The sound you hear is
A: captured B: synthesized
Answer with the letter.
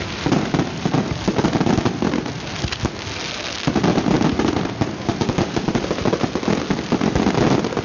A